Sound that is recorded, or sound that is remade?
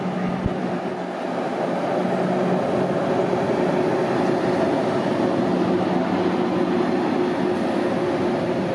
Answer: recorded